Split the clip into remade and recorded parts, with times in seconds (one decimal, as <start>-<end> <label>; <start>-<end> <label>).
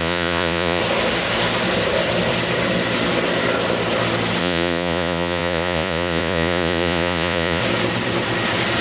0.0-0.8 remade; 0.8-4.4 recorded; 4.4-7.6 remade; 7.6-8.8 recorded